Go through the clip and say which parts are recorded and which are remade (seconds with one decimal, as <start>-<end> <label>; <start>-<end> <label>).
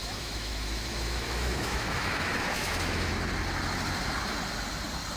0.0-3.1 remade; 3.1-5.2 recorded